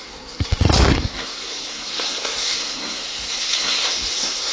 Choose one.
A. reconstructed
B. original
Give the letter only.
A